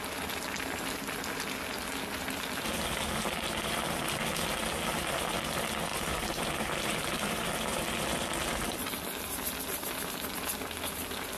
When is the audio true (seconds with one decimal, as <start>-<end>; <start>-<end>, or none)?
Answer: 0.0-5.9; 9.3-11.4